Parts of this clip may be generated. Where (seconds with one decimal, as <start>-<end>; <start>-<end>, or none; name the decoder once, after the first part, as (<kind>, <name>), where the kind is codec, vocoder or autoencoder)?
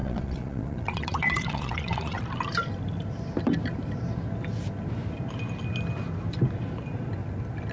0.0-2.2 (vocoder, Vocos)